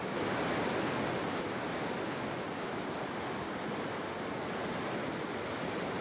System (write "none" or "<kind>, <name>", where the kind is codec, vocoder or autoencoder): none